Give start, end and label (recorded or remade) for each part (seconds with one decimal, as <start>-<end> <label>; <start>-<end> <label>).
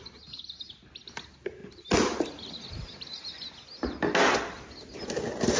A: 0.0-5.6 recorded